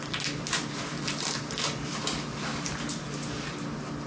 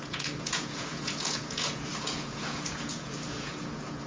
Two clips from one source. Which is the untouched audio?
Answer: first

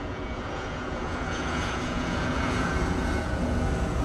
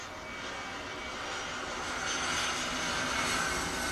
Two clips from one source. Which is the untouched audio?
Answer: second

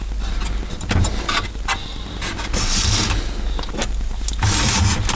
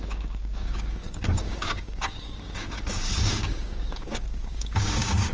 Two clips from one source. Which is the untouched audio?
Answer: first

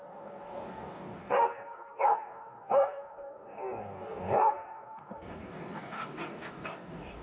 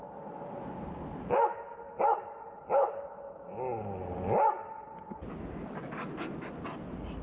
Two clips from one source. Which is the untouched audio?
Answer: second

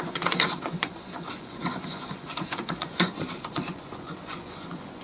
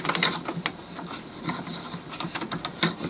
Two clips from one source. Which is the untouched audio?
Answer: second